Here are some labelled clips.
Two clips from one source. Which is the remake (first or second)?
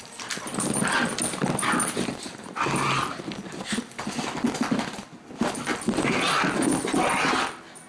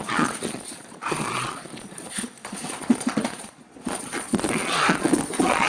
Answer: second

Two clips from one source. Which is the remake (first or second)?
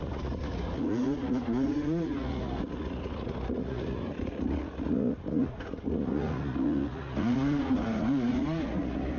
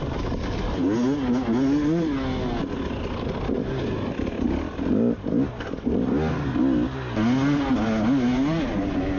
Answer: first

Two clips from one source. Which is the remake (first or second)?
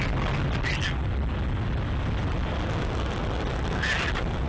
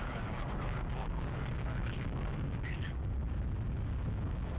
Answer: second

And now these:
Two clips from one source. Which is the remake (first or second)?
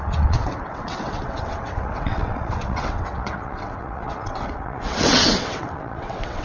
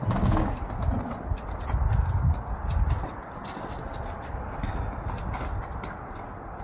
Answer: first